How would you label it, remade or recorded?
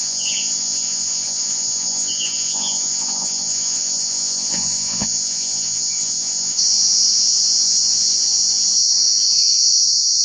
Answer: remade